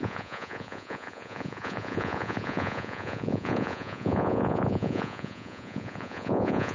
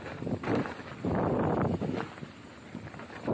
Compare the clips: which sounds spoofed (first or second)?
first